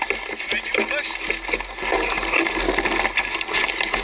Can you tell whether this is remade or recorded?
recorded